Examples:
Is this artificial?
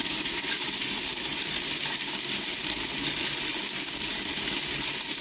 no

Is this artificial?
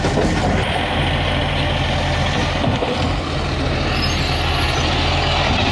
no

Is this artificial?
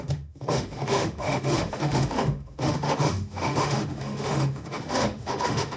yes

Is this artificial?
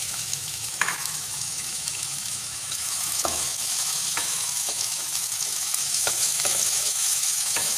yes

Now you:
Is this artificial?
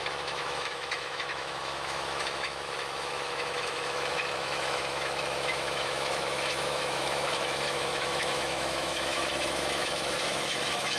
yes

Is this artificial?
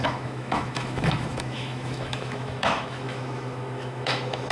yes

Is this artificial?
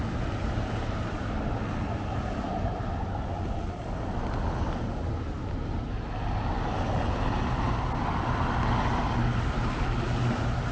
no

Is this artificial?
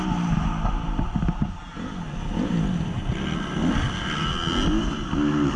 no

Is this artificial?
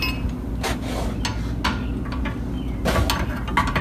no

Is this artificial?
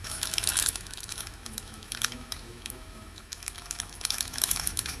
yes